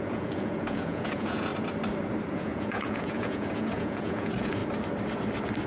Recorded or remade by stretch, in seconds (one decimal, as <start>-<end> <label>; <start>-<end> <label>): 0.0-1.5 remade; 1.5-2.3 recorded; 2.3-4.6 remade; 4.6-5.7 recorded